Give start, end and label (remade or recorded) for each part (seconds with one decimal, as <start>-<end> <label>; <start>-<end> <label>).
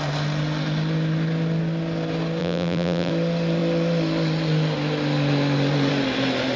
0.0-2.4 recorded; 2.4-3.1 remade; 3.1-6.6 recorded